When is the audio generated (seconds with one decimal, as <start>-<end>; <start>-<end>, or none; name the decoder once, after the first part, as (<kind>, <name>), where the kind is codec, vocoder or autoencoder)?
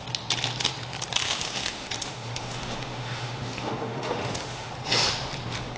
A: 1.2-4.7 (autoencoder, DAC-VAE)